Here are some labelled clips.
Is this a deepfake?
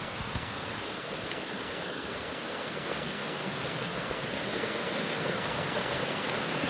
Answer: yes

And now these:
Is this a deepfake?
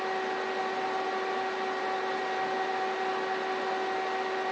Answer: no